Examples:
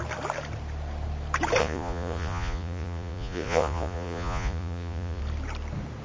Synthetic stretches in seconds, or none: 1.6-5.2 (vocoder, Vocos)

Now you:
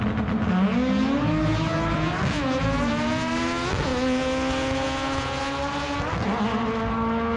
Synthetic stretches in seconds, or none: none

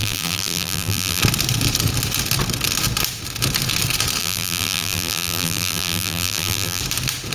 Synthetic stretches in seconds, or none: 0.0-1.2 (vocoder, BigVGAN v2); 4.2-6.8